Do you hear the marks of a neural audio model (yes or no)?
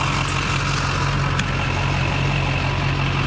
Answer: no